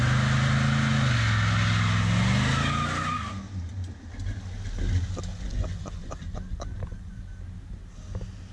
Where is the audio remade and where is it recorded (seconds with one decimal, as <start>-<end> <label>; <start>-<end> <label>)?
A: 0.0-5.3 recorded; 5.3-7.2 remade; 7.2-8.5 recorded